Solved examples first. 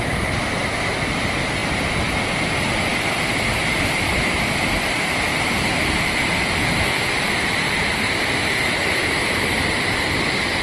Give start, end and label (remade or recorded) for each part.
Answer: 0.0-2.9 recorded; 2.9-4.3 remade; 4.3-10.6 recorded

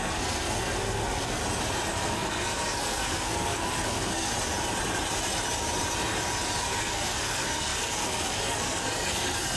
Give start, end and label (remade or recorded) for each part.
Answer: 0.0-1.4 remade; 1.4-1.9 recorded; 1.9-4.3 remade; 4.3-6.6 recorded; 6.6-9.6 remade